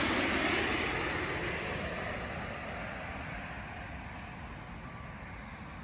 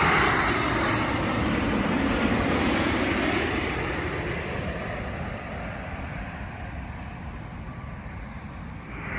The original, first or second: first